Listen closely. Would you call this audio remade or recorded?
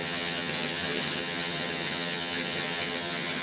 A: remade